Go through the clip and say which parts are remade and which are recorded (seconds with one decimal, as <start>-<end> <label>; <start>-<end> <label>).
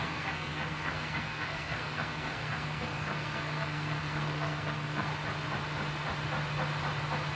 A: 0.0-5.1 remade; 5.1-7.4 recorded